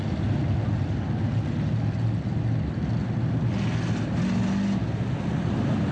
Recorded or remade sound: recorded